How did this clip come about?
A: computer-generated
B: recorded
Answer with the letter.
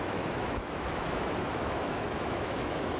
A